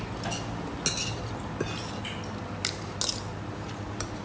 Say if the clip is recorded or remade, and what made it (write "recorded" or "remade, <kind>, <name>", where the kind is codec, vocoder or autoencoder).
recorded